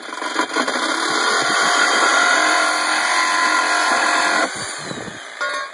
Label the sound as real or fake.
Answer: real